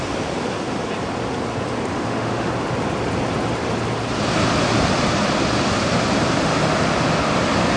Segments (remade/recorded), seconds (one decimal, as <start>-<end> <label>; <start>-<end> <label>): 0.0-1.9 recorded; 1.9-2.5 remade; 2.5-7.8 recorded